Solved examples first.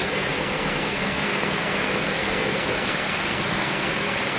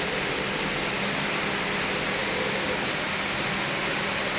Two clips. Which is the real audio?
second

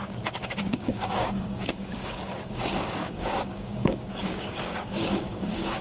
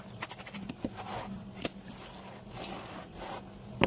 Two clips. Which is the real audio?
second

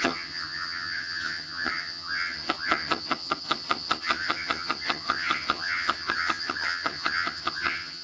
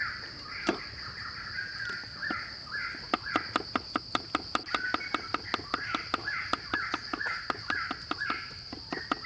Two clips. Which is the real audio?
second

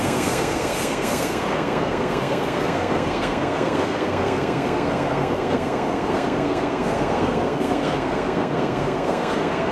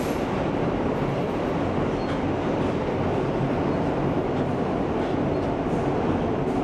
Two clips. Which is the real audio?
second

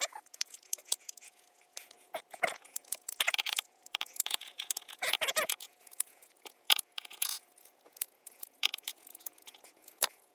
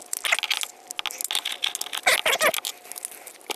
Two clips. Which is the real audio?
second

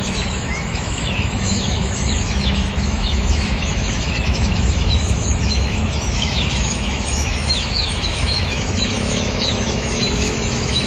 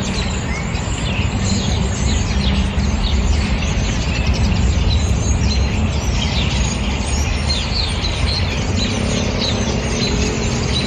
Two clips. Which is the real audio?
second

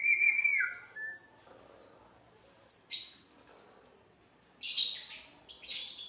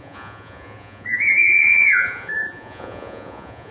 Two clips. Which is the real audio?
first